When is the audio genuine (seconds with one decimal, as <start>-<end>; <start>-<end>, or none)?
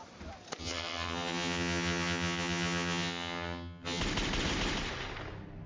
0.0-0.6; 4.0-5.7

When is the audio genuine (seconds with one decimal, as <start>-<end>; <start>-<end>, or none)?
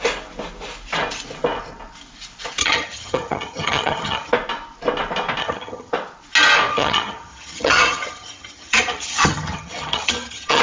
0.0-2.6; 4.3-5.4; 5.9-6.7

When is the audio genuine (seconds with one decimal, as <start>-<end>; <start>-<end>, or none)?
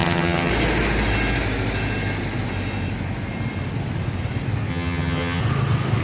0.5-4.7; 5.4-6.0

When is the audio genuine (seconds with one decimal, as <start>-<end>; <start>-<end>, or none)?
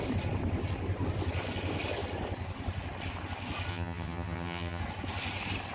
0.0-3.7; 4.8-5.7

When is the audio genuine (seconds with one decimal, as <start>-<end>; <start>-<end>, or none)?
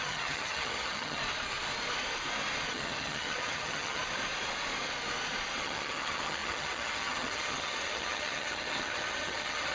1.2-2.7; 4.0-5.6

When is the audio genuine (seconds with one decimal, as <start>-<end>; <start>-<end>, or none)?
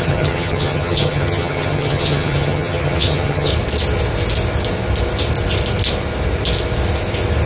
3.5-7.5